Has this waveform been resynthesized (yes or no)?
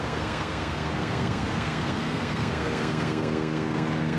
yes